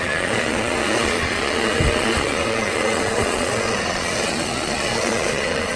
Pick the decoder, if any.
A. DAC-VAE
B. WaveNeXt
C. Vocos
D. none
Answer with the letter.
C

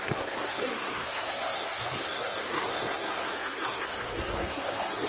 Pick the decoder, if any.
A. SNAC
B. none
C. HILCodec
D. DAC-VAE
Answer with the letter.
A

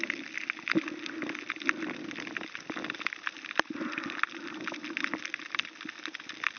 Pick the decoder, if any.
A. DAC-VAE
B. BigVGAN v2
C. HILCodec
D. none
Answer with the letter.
D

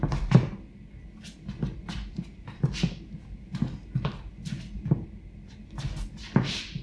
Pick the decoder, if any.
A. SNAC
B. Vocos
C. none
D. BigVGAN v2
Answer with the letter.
C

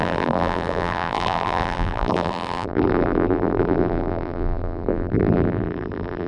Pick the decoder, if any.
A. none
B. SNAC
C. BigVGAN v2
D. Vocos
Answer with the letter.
C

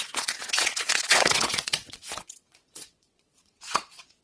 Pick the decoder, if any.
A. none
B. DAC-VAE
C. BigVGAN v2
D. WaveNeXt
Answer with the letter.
D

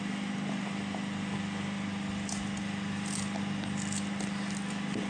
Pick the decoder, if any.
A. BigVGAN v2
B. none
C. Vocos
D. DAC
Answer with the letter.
A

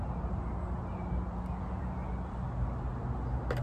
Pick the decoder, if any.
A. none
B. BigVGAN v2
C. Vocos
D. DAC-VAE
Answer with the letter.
A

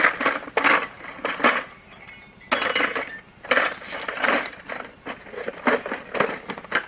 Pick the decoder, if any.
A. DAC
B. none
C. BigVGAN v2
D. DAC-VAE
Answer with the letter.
B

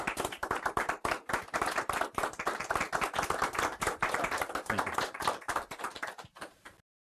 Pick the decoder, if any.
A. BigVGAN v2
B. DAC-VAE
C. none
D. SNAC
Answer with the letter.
A